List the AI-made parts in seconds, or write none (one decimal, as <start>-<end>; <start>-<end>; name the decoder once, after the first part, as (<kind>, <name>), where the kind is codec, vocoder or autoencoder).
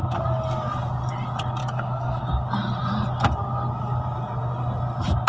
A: 1.6-2.2 (codec, DAC)